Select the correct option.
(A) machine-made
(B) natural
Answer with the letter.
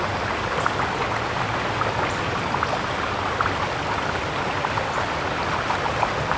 B